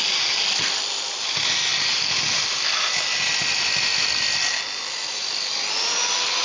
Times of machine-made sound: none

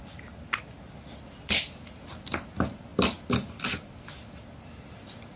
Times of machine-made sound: none

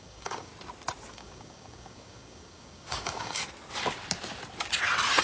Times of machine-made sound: 0.0-0.5 (codec, DAC); 1.1-3.4

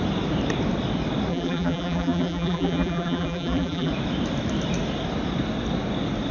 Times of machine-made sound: 1.3-3.9 (vocoder, BigVGAN v2)

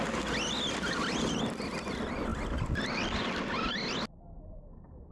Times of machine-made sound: none

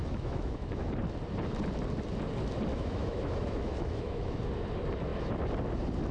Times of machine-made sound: 0.0-0.9 (autoencoder, DAC-VAE); 2.7-4.4

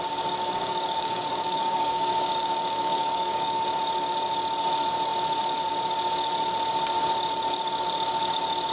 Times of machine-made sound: 0.4-3.6 (codec, DAC)

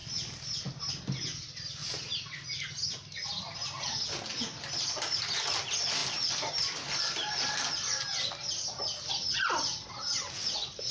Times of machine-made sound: none